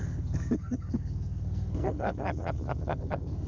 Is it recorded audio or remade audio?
remade